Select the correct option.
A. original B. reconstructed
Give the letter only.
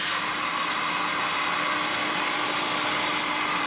A